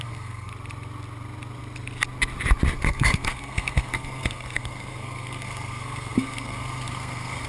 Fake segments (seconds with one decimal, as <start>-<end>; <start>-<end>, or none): 0.0-0.5; 2.8-7.5